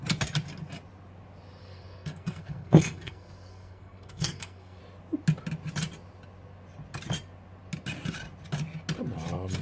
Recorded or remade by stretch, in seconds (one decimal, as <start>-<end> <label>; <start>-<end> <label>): 0.0-1.6 recorded; 1.6-4.8 remade; 4.8-9.6 recorded